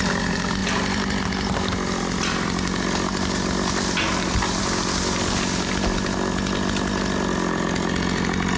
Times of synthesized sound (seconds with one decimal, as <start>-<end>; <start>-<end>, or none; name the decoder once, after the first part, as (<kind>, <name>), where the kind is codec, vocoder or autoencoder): none